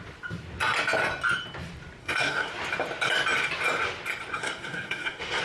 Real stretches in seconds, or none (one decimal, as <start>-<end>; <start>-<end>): 0.0-2.0; 2.5-4.4